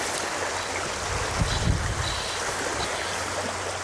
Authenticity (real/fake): real